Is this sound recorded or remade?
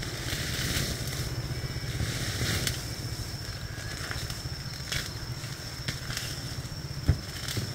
recorded